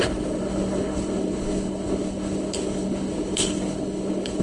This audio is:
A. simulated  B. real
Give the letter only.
A